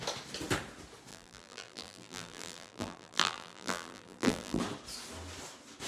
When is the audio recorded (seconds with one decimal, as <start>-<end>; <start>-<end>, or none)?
0.0-1.1; 4.6-5.9